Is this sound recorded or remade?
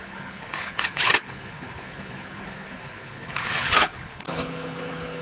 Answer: remade